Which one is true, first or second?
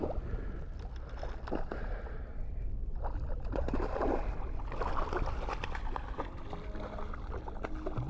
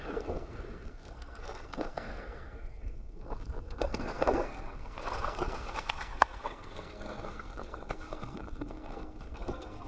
first